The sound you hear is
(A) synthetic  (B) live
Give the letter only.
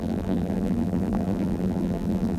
A